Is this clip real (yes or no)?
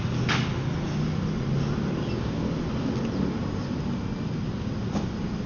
yes